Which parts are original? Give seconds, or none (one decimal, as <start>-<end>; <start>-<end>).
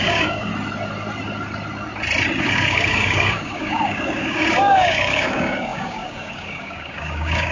0.5-2.4